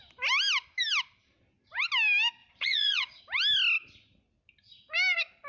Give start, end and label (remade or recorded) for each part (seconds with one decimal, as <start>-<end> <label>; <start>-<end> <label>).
0.0-2.4 recorded; 2.4-3.2 remade; 3.2-5.5 recorded